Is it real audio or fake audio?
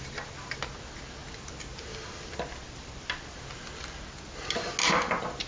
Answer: real